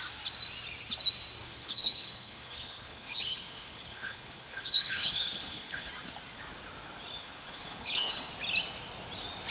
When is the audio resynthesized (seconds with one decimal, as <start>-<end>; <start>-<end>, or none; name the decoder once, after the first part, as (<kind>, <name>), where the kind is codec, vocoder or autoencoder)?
1.4-5.9 (codec, HILCodec); 7.2-8.3